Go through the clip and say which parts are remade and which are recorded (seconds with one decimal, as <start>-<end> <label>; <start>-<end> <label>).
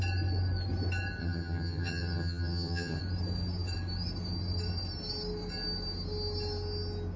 0.0-1.2 recorded; 1.2-3.0 remade; 3.0-7.2 recorded